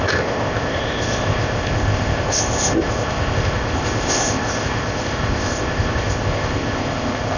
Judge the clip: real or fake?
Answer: fake